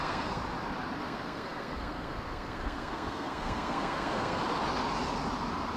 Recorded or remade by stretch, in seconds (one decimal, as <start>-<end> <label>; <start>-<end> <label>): 0.0-0.4 remade; 0.4-1.0 recorded; 1.0-4.4 remade; 4.4-5.8 recorded